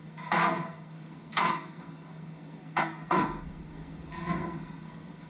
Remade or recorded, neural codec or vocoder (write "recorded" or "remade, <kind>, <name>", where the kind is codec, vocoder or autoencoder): remade, codec, SNAC